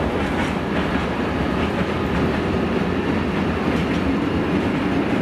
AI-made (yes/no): no